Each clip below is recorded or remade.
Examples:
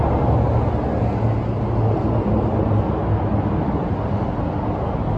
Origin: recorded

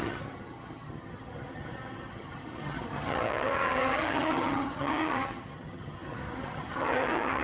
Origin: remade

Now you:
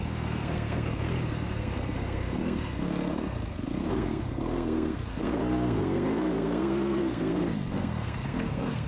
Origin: remade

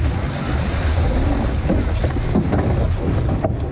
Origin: recorded